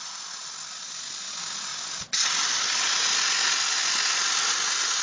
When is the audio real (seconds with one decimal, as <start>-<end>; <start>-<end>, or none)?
0.0-5.0